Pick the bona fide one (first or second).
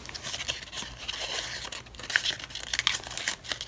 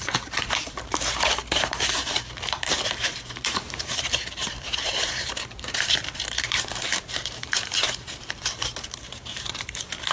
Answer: first